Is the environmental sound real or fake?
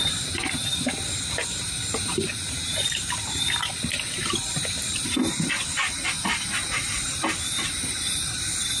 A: fake